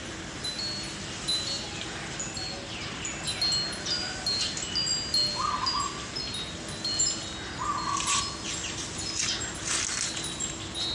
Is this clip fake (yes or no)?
no